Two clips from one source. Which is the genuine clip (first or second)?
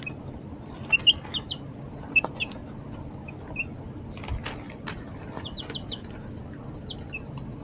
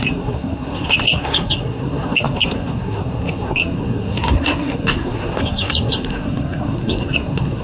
first